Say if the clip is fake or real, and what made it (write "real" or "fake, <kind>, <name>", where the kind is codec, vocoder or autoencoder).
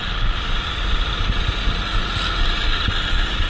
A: real